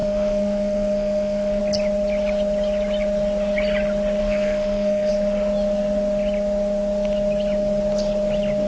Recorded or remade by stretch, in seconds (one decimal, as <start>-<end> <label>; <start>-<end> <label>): 0.0-1.6 remade; 1.6-4.2 recorded; 4.2-5.1 remade; 5.1-8.7 recorded